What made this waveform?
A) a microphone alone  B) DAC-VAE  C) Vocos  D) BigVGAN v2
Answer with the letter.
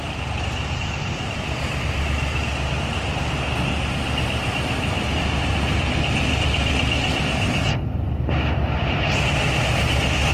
A